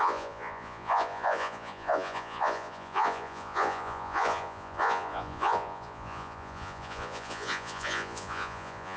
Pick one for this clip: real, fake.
fake